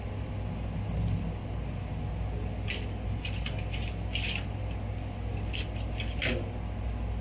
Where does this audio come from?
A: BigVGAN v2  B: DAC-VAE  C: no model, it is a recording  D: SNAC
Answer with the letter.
C